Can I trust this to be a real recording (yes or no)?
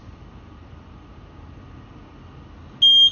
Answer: yes